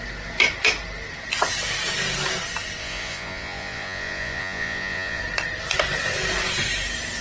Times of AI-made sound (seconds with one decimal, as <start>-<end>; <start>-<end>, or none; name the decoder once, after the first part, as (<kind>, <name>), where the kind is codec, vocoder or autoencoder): 2.8-5.2 (vocoder, Vocos)